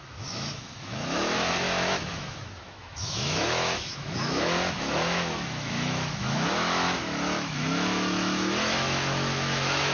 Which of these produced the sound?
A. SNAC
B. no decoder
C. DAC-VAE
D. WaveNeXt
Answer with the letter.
C